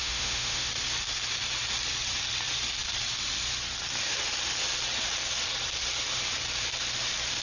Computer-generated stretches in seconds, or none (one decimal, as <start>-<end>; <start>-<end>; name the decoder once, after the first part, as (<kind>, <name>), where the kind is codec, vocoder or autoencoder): 0.0-0.7 (autoencoder, DAC-VAE)